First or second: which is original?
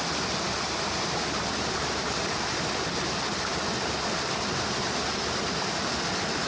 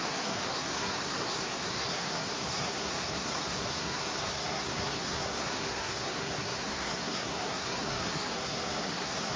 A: first